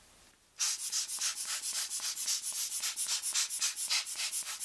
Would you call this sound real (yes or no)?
yes